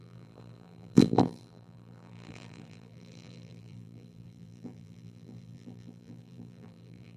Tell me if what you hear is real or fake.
fake